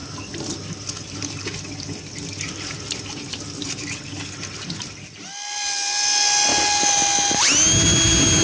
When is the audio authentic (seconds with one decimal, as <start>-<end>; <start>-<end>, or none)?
0.0-8.4